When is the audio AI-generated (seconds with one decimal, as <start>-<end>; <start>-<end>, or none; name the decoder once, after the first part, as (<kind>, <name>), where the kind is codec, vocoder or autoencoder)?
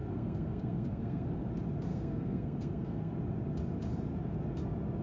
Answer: 0.0-1.5 (codec, SNAC); 1.9-3.1